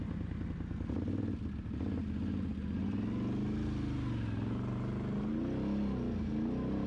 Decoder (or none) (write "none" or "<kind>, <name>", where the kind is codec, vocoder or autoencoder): none